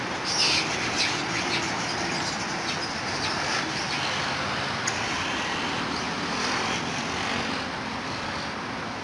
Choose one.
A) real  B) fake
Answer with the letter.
A